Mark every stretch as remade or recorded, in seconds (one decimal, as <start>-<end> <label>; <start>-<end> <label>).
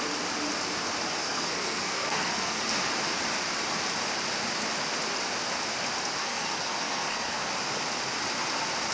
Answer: 0.0-1.2 recorded; 1.2-2.6 remade; 2.6-6.2 recorded; 6.2-7.5 remade; 7.5-8.9 recorded